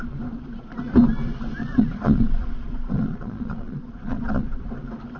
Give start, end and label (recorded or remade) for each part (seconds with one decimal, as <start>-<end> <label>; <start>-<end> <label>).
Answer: 0.0-1.6 recorded; 1.6-4.7 remade; 4.7-5.2 recorded